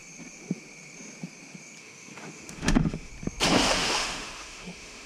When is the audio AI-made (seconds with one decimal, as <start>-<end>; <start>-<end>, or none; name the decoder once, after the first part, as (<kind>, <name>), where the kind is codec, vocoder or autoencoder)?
1.8-3.1 (autoencoder, DAC-VAE); 3.6-5.1